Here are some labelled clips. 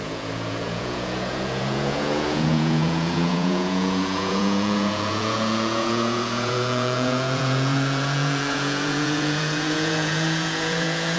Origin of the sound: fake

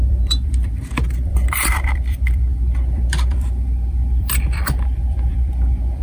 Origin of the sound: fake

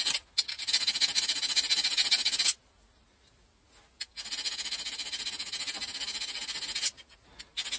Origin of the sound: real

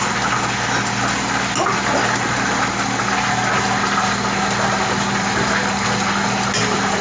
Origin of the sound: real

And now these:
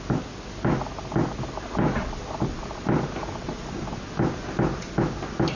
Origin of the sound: real